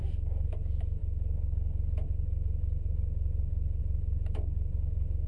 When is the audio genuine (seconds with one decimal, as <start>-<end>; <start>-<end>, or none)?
0.0-5.3